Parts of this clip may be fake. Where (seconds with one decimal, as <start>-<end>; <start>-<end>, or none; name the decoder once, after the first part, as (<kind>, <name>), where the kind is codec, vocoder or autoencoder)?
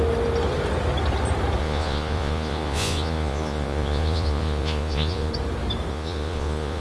1.6-5.3 (vocoder, Vocos); 5.9-6.8